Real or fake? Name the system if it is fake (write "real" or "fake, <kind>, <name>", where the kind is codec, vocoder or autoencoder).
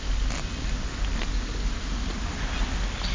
real